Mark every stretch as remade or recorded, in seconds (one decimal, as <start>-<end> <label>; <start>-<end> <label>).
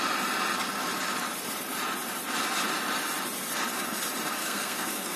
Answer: 0.0-4.4 recorded; 4.4-5.2 remade